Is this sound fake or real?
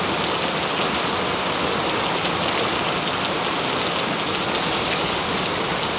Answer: real